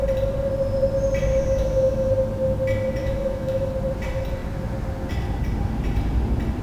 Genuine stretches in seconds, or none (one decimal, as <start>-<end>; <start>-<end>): 0.0-1.3; 2.1-3.0; 3.7-6.6